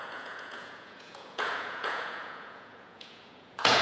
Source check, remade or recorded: remade